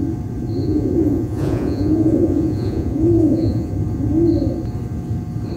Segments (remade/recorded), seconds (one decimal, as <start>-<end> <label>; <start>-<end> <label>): 0.0-0.6 recorded; 0.6-3.7 remade; 3.7-5.6 recorded